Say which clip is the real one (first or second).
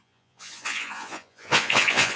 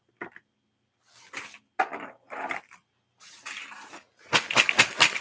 second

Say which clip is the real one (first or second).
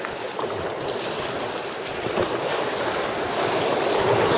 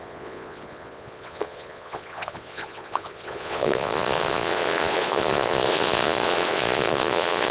first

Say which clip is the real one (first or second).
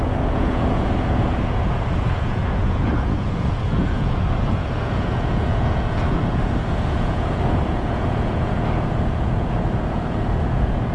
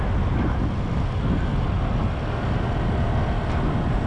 second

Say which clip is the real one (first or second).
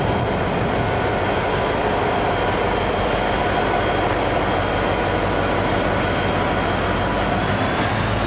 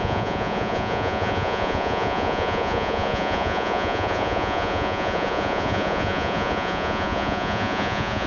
first